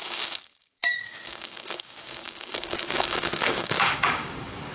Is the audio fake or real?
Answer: fake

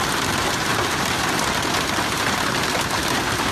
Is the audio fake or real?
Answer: real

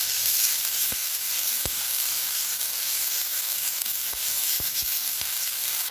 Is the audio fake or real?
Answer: fake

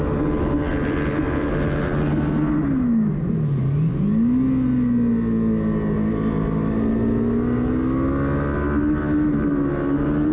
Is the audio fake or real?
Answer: real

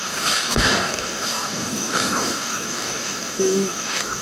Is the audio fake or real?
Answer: fake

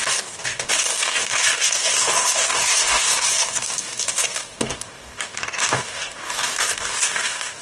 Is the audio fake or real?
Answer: fake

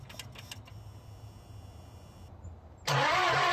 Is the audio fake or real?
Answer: real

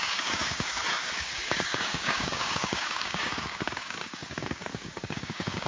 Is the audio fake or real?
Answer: fake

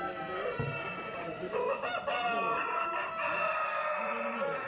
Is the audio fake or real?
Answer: real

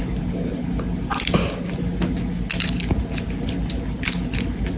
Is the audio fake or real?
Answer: real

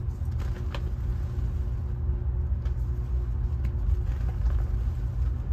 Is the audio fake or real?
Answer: real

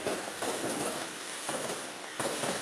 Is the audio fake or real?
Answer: fake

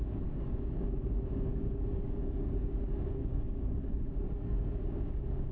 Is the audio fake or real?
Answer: fake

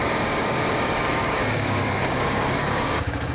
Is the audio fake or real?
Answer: fake